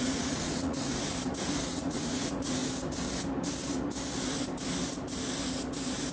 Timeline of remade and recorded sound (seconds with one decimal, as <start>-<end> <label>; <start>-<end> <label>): 0.0-1.1 remade; 1.1-1.7 recorded; 1.7-2.6 remade; 2.6-6.1 recorded